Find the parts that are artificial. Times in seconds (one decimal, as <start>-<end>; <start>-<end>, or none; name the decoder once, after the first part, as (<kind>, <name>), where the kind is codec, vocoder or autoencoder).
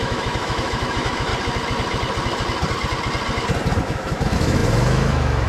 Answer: 0.0-1.3 (autoencoder, DAC-VAE); 3.8-5.5